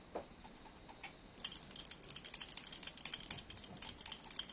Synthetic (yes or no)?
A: no